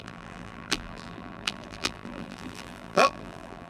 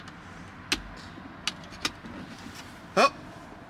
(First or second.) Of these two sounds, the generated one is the first